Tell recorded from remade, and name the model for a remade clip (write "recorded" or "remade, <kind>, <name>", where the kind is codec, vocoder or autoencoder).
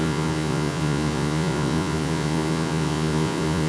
remade, vocoder, Vocos